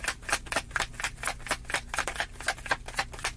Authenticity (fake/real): real